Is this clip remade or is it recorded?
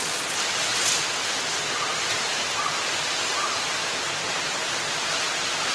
recorded